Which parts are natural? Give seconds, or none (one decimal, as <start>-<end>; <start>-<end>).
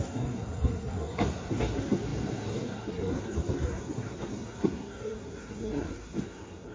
none